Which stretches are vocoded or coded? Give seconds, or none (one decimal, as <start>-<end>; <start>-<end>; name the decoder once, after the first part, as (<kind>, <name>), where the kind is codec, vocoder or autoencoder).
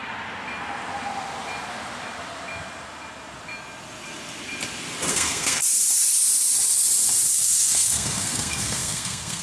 5.1-5.6 (codec, SNAC); 7.3-9.4